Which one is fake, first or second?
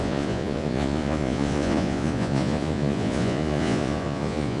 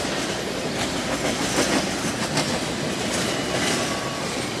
first